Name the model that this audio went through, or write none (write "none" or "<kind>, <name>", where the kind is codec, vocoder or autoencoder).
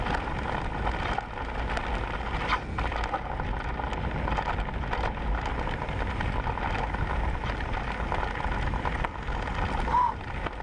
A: none